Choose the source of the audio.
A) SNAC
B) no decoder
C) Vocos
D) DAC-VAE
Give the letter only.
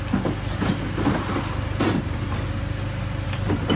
B